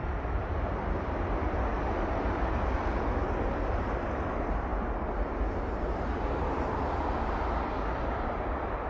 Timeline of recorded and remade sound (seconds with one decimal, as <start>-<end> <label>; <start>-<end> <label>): 0.0-8.9 remade